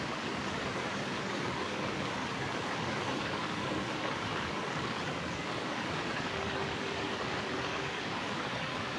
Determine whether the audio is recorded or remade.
remade